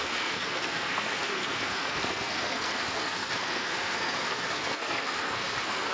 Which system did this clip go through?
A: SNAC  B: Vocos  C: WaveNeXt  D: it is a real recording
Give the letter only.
A